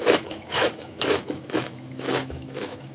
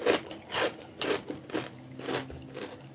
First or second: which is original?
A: second